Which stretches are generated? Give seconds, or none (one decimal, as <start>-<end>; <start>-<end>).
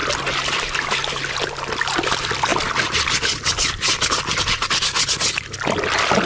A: none